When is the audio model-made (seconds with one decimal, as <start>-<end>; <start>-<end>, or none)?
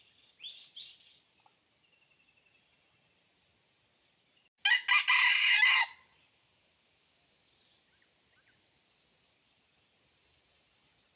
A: none